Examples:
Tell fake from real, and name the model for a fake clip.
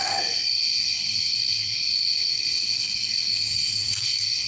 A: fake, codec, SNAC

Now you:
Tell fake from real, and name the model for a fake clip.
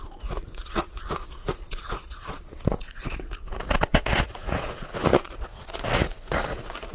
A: fake, vocoder, Vocos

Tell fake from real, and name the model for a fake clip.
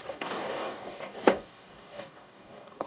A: fake, codec, DAC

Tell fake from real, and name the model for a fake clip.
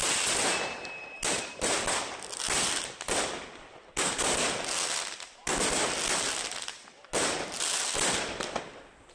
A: real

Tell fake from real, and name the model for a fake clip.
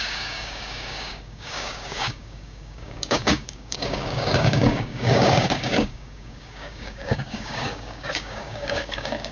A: fake, codec, DAC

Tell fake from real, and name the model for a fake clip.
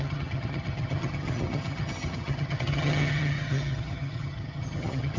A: fake, vocoder, HiFi-GAN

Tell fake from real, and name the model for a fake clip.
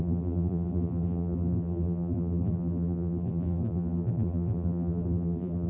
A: fake, vocoder, BigVGAN v2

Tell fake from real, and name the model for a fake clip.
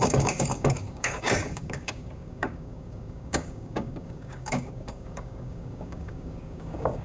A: fake, codec, DAC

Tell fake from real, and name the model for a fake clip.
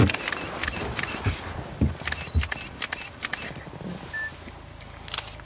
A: real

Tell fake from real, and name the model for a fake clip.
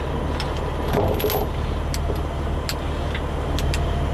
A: real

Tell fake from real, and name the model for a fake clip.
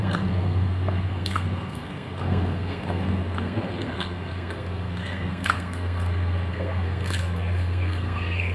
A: fake, codec, SNAC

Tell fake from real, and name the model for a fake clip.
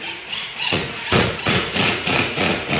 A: fake, vocoder, Vocos